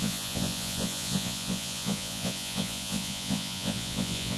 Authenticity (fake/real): fake